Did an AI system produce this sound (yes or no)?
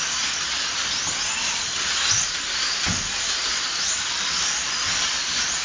no